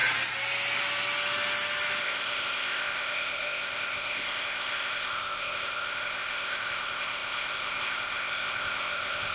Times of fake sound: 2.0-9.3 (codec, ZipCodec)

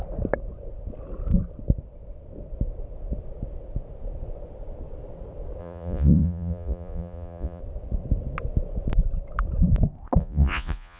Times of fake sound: 5.6-7.6 (vocoder, Vocos); 10.2-11.0